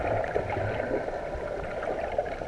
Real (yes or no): yes